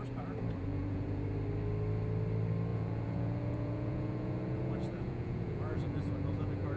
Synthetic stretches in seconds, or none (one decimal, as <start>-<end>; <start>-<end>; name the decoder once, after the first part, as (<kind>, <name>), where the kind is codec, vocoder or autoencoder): 0.7-1.2 (vocoder, Vocos); 2.7-6.8